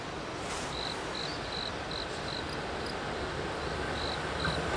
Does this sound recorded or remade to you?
recorded